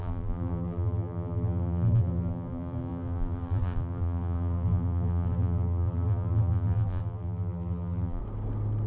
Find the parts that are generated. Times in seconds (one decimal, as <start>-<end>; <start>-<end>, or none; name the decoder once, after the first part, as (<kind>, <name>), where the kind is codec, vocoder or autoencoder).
0.0-8.2 (vocoder, BigVGAN v2)